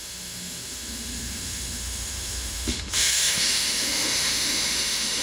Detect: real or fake fake